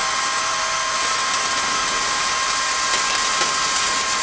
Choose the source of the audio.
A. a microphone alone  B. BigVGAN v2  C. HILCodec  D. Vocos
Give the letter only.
A